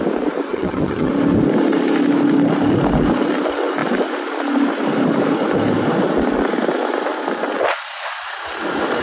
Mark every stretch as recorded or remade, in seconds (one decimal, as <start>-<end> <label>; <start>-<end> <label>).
0.0-0.5 recorded; 0.5-1.1 remade; 1.1-9.0 recorded